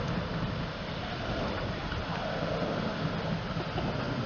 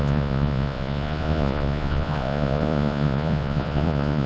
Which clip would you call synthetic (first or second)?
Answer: second